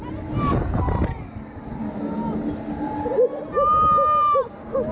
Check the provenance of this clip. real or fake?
real